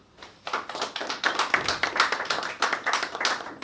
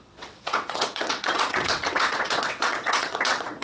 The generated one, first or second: second